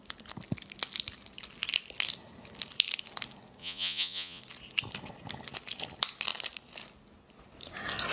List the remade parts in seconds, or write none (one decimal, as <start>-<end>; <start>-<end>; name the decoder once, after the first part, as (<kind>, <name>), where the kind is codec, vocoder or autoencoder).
3.6-4.4 (vocoder, Vocos)